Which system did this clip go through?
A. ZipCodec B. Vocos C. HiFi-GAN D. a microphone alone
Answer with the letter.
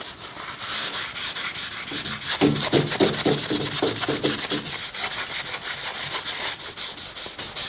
D